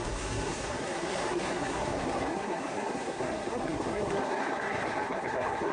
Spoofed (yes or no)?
yes